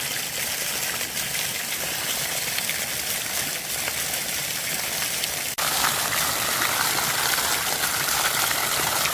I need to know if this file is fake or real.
real